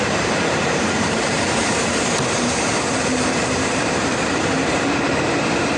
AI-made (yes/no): yes